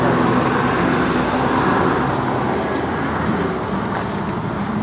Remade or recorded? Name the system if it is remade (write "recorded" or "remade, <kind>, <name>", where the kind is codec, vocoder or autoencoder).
recorded